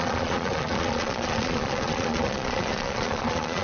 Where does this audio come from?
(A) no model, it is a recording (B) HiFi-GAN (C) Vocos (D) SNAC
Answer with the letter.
C